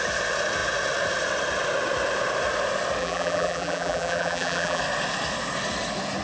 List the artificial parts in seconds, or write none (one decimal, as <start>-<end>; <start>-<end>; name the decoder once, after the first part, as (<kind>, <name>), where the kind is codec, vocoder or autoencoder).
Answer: 3.0-4.8 (vocoder, BigVGAN v2)